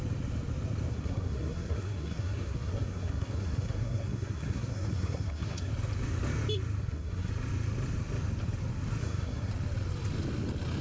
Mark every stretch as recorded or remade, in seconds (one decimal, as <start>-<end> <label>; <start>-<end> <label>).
0.0-0.9 recorded; 0.9-5.7 remade; 5.7-6.8 recorded; 6.8-7.3 remade; 7.3-9.0 recorded; 9.0-9.5 remade; 9.5-10.8 recorded